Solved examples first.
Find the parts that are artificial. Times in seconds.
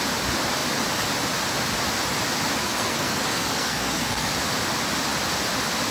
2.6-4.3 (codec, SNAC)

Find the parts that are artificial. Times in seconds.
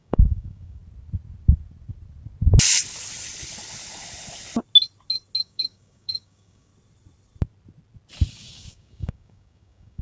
0.0-0.8 (codec, DAC); 5.4-6.7; 8.3-10.0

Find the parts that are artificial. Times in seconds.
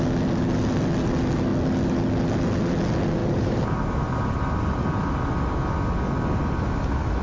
3.2-5.3 (vocoder, BigVGAN v2)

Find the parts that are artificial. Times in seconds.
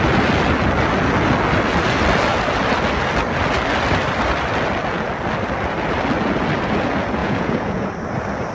7.2-7.9 (vocoder, Vocos)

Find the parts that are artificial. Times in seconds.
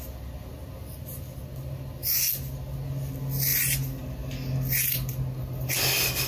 none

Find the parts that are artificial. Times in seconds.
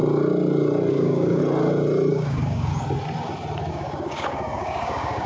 0.9-1.4 (codec, DAC); 2.1-2.7; 3.7-5.3